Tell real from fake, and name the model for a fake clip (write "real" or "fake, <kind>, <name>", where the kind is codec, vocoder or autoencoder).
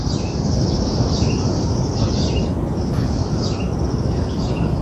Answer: real